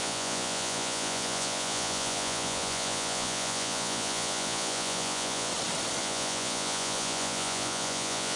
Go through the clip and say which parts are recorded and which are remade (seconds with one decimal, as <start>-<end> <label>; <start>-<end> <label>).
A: 0.0-5.5 remade; 5.5-6.0 recorded; 6.0-8.4 remade